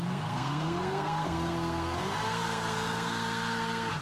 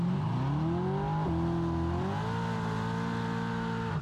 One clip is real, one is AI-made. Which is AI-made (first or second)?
first